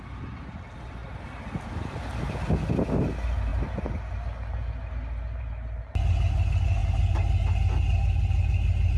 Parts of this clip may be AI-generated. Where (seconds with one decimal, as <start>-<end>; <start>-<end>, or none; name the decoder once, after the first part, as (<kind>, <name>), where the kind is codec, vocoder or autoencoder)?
none